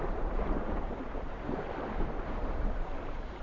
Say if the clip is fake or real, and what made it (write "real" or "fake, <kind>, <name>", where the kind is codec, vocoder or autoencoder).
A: fake, vocoder, BigVGAN v2